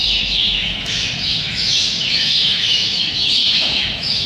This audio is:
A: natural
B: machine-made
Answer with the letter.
B